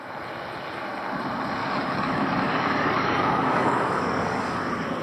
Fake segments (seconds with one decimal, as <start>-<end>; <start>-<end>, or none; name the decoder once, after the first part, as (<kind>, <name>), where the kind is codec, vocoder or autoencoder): 1.6-4.6 (codec, DAC)